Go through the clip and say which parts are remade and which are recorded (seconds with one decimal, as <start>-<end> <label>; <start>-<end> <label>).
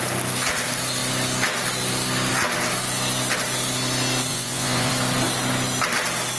0.0-4.3 recorded; 4.3-4.9 remade; 4.9-6.4 recorded